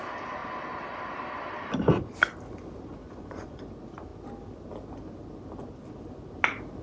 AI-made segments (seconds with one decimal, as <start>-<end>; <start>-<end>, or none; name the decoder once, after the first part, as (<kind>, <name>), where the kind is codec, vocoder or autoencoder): 3.0-3.6 (vocoder, Vocos)